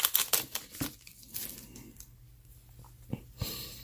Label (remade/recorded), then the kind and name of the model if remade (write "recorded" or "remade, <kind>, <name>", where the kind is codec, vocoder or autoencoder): recorded